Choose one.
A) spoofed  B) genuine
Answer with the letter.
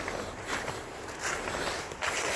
B